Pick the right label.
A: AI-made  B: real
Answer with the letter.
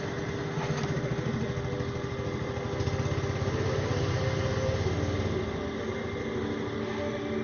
B